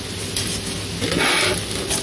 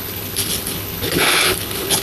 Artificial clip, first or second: second